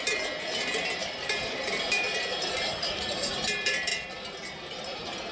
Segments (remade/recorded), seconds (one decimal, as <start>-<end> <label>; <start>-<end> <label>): 0.0-3.9 remade; 3.9-4.8 recorded; 4.8-5.3 remade